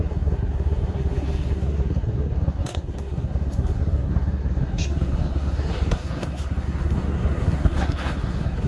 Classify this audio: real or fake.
fake